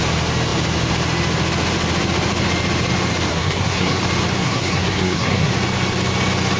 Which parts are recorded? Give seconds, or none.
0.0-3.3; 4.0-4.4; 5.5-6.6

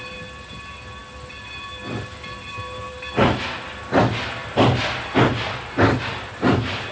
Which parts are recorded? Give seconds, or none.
0.0-6.9

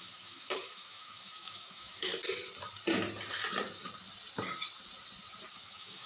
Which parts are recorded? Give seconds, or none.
2.1-5.5